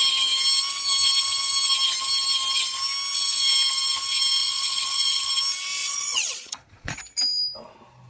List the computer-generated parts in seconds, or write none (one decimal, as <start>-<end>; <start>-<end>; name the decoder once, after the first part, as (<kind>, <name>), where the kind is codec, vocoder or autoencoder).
4.4-5.3 (vocoder, Vocos); 5.8-7.0